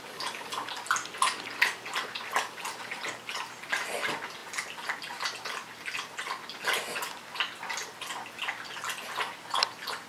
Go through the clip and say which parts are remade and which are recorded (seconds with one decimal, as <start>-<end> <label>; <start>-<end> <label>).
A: 0.0-10.1 recorded